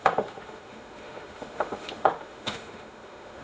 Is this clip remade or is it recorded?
remade